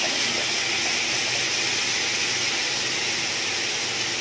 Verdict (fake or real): real